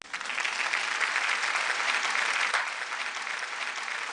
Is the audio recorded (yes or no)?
yes